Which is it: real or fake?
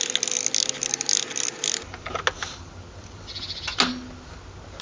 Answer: real